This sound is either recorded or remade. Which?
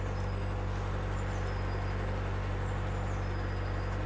recorded